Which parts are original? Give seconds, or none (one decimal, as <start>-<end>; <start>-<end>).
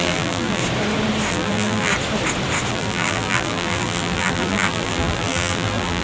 0.6-1.3; 1.9-2.7